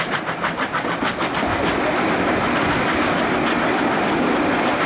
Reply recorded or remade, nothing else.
recorded